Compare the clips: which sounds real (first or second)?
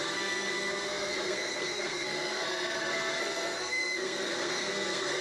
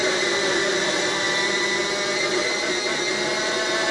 second